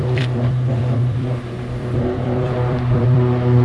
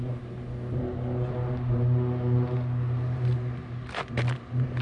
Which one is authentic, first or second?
second